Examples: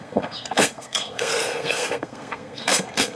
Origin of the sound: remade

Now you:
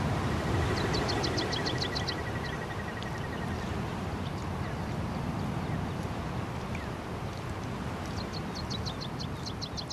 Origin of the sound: recorded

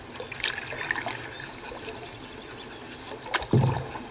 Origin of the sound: recorded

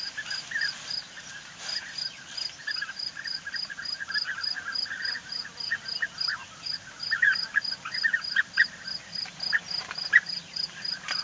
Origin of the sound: recorded